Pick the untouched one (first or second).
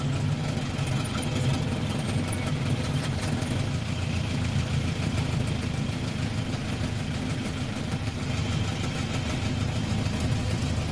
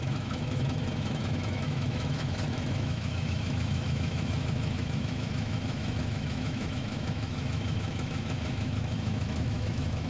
first